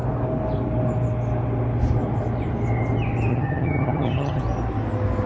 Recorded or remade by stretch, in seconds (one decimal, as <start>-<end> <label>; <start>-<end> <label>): 0.0-3.3 recorded; 3.3-4.4 remade; 4.4-5.3 recorded